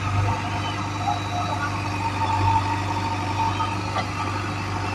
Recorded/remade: recorded